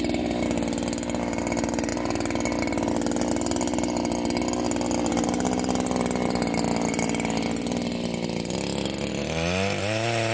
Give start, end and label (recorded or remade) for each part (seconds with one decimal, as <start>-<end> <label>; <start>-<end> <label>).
0.0-5.1 recorded; 5.1-9.1 remade; 9.1-10.3 recorded